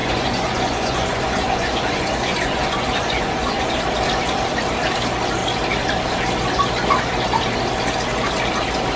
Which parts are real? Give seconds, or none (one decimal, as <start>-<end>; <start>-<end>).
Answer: 3.8-9.0

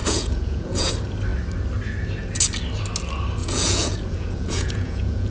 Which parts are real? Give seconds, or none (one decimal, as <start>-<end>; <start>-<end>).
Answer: 0.9-3.4

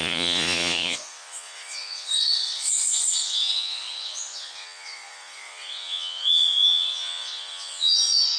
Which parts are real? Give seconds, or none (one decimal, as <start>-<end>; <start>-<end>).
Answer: none